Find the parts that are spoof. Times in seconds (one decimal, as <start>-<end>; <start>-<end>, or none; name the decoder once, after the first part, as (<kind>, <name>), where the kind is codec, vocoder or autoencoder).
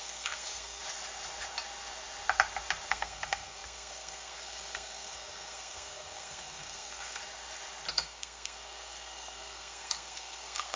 0.0-0.8 (codec, SNAC); 2.9-7.2; 7.9-10.8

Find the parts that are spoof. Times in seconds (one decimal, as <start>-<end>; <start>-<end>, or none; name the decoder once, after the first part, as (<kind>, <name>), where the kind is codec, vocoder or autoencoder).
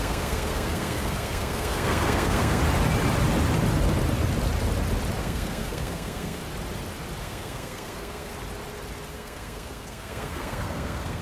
0.0-2.6 (codec, SNAC); 5.2-6.4; 7.2-8.3; 9.1-11.2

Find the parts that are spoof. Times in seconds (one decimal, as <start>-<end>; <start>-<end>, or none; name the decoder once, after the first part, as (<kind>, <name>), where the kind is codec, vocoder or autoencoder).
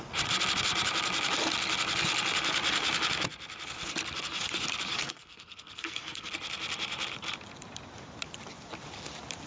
4.9-6.3 (codec, SNAC)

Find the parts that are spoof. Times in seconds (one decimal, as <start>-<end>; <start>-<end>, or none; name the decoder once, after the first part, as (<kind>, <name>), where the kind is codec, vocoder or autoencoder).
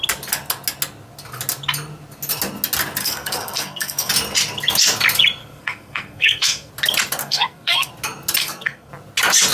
3.0-4.1 (codec, SNAC); 5.4-6.7; 7.2-7.9; 8.4-8.9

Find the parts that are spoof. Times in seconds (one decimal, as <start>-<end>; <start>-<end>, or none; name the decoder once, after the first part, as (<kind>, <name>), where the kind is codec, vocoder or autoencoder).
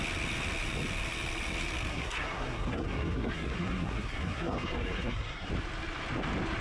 1.9-5.5 (codec, SNAC)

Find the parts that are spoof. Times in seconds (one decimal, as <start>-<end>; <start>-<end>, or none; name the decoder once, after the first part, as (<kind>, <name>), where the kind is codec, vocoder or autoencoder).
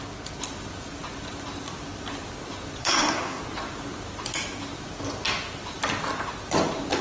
2.8-3.4 (codec, SNAC)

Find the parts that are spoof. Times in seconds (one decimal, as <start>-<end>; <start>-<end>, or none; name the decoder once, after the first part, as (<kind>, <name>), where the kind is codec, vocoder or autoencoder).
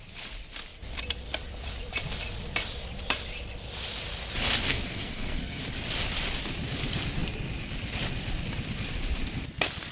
4.7-5.6 (codec, SNAC)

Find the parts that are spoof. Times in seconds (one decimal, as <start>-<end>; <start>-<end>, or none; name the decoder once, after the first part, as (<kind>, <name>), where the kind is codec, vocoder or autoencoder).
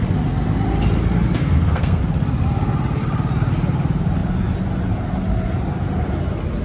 1.4-2.0 (codec, SNAC)